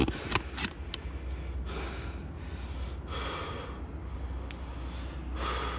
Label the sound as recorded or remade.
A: recorded